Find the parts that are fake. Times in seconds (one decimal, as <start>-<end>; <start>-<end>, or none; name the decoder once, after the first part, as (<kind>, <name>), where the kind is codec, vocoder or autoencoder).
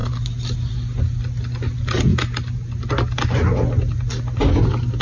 none